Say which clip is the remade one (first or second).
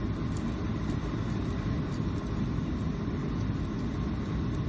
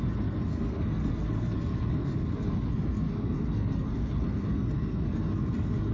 second